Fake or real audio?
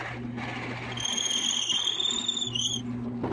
real